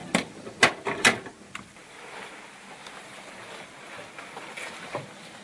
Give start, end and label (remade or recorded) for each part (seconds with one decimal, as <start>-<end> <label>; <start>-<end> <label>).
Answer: 0.0-0.6 remade; 0.6-5.4 recorded